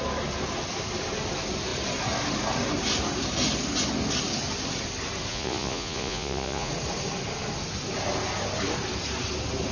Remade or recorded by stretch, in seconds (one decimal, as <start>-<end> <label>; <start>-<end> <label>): 0.0-5.3 recorded; 5.3-6.7 remade; 6.7-9.7 recorded